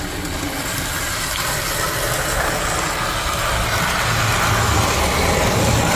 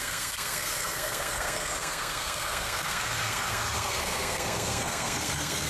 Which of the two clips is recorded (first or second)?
first